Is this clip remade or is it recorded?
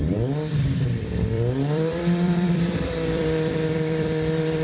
remade